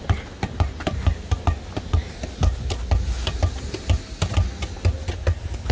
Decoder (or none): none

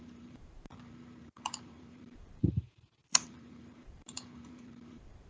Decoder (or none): vocoder, BigVGAN v2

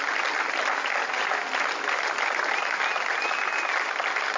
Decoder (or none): none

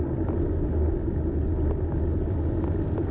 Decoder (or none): none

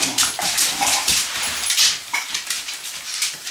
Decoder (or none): vocoder, BigVGAN v2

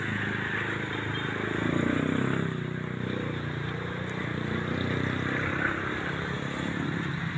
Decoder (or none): none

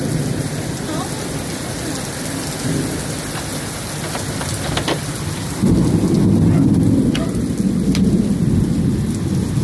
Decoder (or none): none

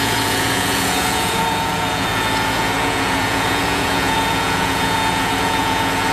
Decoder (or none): vocoder, Vocos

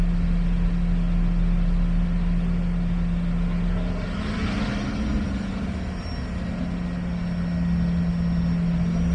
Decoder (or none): none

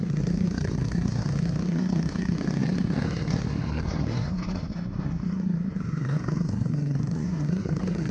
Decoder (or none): codec, SNAC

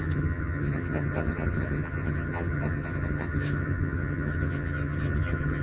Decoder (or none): vocoder, HiFi-GAN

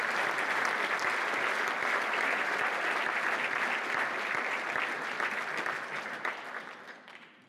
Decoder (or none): vocoder, BigVGAN v2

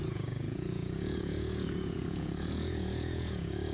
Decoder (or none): vocoder, Vocos